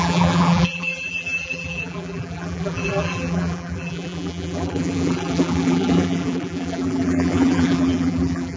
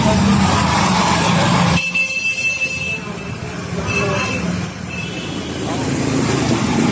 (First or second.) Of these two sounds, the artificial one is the first